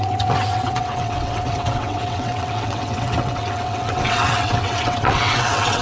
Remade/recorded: remade